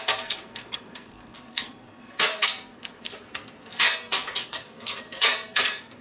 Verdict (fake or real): fake